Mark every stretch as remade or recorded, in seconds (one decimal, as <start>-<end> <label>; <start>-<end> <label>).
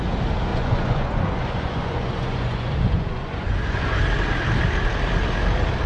0.0-0.5 recorded; 0.5-4.0 remade; 4.0-5.9 recorded